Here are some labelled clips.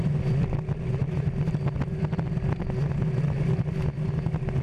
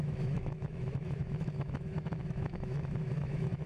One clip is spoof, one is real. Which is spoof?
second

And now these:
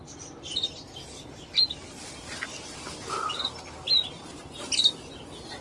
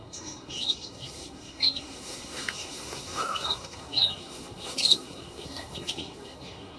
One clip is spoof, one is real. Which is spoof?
second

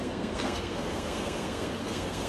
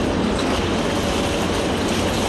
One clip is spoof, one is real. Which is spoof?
first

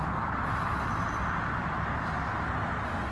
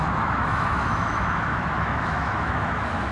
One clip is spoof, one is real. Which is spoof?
second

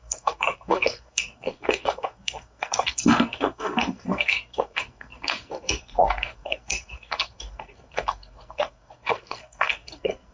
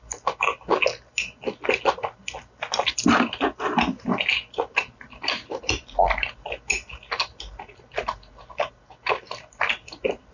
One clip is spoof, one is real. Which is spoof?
first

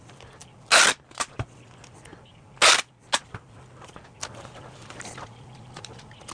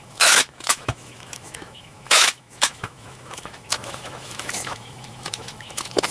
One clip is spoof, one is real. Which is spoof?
second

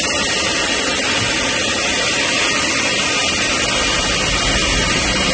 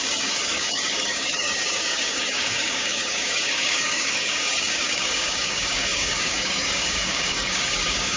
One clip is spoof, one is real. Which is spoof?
second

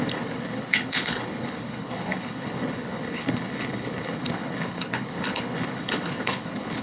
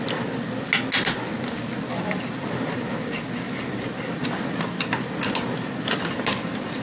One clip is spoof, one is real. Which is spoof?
first